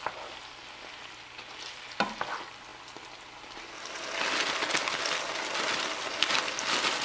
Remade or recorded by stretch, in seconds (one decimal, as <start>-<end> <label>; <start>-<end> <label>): 0.0-7.0 recorded